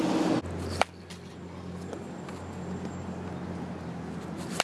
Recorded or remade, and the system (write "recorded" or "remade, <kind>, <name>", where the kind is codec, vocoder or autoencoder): recorded